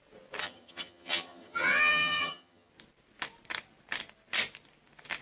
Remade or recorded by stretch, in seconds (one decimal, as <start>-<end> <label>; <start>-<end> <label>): 0.0-0.4 recorded; 0.4-2.7 remade; 2.7-5.2 recorded